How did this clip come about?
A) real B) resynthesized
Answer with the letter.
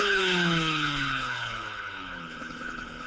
B